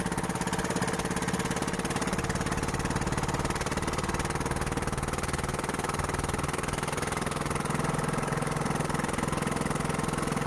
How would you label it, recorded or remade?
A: recorded